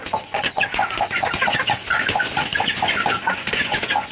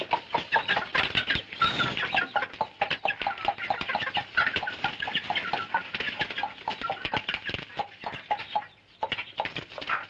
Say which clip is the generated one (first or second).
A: first